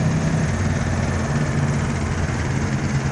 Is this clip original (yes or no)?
yes